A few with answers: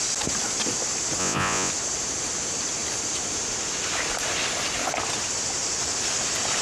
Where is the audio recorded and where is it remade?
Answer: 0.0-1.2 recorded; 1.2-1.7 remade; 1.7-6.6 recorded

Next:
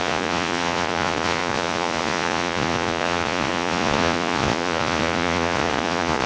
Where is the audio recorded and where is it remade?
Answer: 0.0-6.3 remade

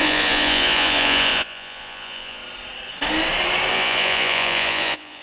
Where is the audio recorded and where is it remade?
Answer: 0.0-2.4 remade; 2.4-3.7 recorded; 3.7-5.2 remade

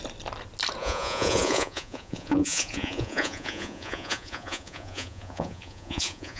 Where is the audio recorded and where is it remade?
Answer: 0.0-0.8 recorded; 0.8-6.4 remade